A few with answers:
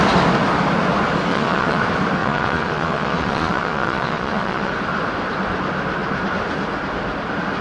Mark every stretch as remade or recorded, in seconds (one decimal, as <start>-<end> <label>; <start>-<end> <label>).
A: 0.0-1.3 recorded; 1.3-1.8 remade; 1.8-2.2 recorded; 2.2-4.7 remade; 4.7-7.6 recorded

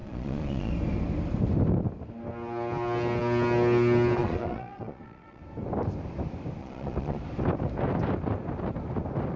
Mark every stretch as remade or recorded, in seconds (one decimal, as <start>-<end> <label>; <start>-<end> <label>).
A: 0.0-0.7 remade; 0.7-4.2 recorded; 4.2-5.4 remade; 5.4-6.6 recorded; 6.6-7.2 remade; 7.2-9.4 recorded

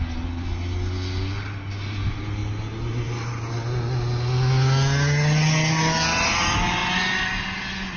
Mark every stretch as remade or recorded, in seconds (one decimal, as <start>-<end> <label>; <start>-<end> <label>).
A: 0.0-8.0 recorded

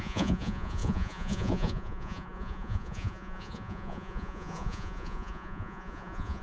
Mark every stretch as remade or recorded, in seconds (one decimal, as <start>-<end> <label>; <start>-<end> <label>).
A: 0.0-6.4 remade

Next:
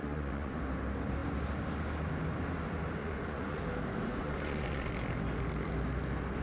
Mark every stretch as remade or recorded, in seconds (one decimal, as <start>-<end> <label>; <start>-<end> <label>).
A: 0.0-0.6 remade; 0.6-3.0 recorded; 3.0-3.6 remade; 3.6-4.1 recorded; 4.1-4.9 remade; 4.9-6.4 recorded

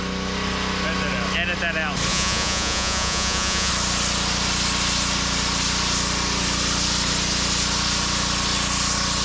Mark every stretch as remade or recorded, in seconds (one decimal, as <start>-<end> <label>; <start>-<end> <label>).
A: 0.0-2.1 recorded; 2.1-3.7 remade; 3.7-9.2 recorded

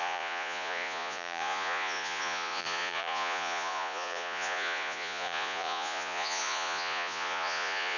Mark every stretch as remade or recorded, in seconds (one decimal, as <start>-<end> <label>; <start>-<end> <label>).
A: 0.0-8.0 remade

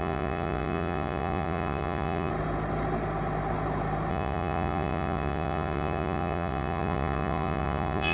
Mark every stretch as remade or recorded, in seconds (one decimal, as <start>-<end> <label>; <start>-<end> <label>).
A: 0.0-2.3 remade; 2.3-4.1 recorded; 4.1-8.1 remade